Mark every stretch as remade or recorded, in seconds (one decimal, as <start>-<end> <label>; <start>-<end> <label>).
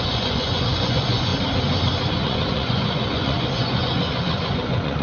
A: 0.0-1.3 remade; 1.3-2.1 recorded; 2.1-5.0 remade